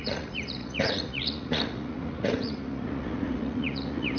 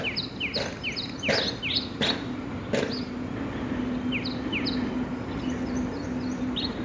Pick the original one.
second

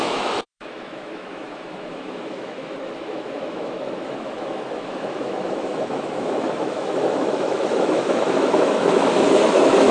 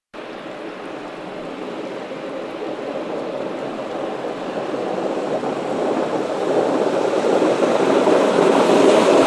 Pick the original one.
second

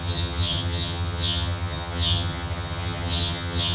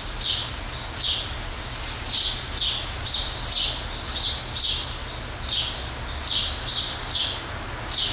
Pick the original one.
second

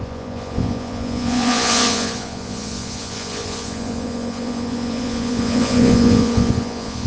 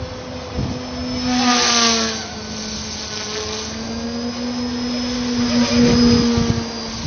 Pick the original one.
second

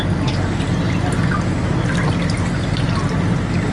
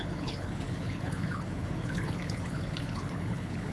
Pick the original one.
first